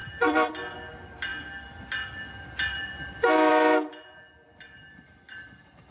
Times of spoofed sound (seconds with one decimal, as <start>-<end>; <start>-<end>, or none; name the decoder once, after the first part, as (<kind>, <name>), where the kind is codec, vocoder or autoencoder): 0.0-0.5 (vocoder, BigVGAN v2)